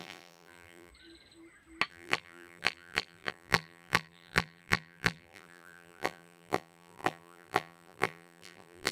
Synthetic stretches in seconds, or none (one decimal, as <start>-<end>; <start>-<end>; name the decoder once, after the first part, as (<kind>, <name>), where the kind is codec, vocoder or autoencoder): 0.0-0.9 (vocoder, BigVGAN v2); 1.9-8.9